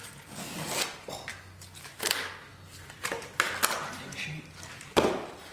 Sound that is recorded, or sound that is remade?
recorded